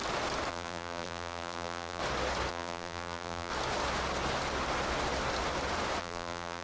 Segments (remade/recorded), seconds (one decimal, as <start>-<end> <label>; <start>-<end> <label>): 0.0-0.5 recorded; 0.5-2.0 remade; 2.0-2.5 recorded; 2.5-3.5 remade; 3.5-6.0 recorded; 6.0-6.6 remade